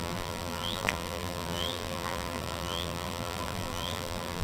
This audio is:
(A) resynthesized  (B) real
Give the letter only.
A